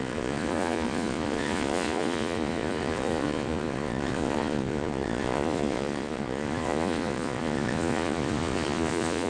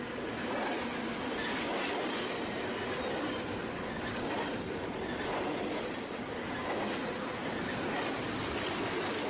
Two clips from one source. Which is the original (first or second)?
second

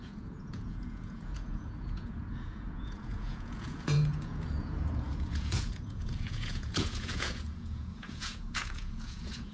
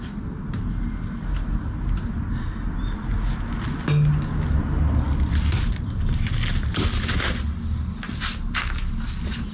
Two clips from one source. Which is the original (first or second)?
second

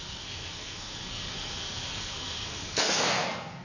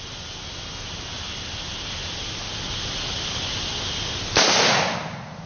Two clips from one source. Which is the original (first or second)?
second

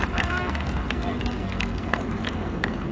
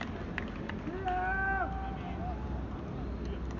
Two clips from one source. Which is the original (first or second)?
second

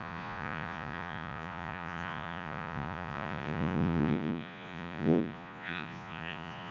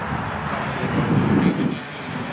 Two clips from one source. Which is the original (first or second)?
second